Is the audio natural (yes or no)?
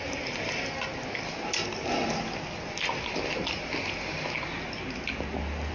yes